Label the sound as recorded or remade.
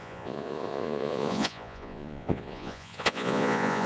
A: remade